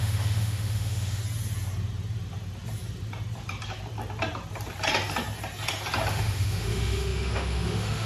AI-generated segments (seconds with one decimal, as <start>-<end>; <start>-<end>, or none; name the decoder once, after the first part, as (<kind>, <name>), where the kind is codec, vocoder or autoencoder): 0.0-1.2 (autoencoder, DAC-VAE); 6.1-8.1